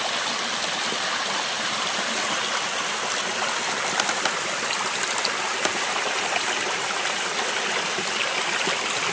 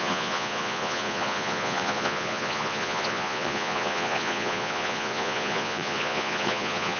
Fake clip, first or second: second